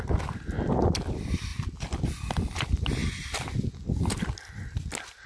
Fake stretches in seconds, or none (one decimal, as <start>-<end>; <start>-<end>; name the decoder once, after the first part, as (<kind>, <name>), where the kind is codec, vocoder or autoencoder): none